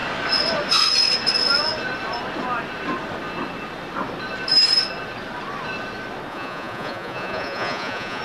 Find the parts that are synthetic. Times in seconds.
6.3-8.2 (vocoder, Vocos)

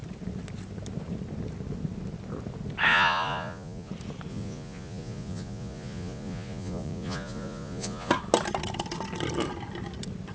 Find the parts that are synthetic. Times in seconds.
2.9-3.9 (vocoder, Vocos); 4.3-8.1

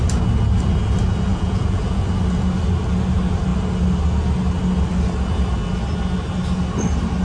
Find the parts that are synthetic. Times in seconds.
1.3-2.0 (vocoder, Vocos)

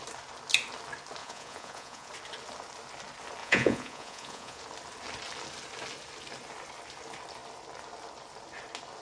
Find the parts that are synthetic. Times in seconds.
1.2-2.1 (vocoder, Vocos); 3.4-4.6

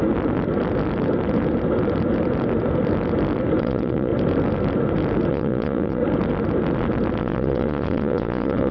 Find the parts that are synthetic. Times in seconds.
3.6-4.1 (vocoder, Vocos); 5.3-6.0; 7.2-8.7

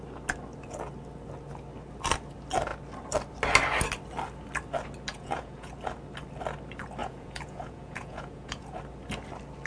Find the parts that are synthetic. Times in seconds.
5.1-5.7 (vocoder, Vocos); 7.0-8.8

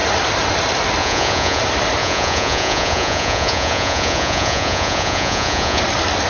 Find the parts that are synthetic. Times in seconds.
1.0-1.6 (vocoder, Vocos); 2.0-5.8